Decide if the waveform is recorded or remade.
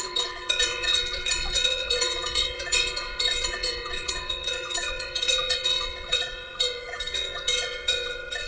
remade